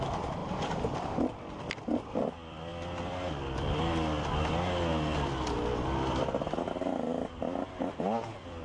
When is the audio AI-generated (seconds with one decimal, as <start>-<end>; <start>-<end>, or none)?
0.0-2.7; 7.4-8.6